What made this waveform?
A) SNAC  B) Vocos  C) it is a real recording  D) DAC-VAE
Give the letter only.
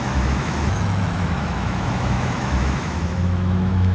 D